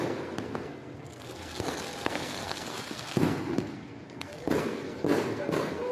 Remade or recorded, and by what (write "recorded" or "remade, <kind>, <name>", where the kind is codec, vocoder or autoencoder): remade, codec, SNAC